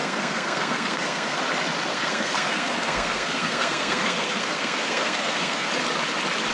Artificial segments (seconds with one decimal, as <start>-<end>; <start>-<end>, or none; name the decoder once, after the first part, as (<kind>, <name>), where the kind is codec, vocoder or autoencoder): 0.0-1.4 (codec, SNAC); 1.9-5.7